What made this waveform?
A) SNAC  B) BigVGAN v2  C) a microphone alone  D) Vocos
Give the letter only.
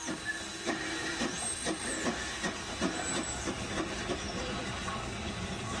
C